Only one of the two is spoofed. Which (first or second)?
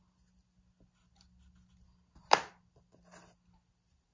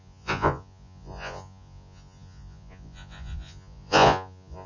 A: second